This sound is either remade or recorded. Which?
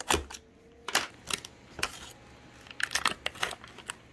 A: recorded